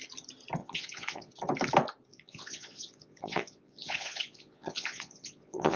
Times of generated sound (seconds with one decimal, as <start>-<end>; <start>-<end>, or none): 0.6-1.3; 2.1-5.8